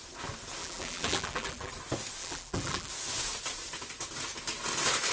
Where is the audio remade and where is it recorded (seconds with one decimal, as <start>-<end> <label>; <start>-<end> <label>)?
0.0-0.6 recorded; 0.6-1.7 remade; 1.7-2.2 recorded; 2.2-2.9 remade; 2.9-5.1 recorded